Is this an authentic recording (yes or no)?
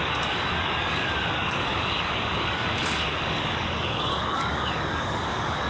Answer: no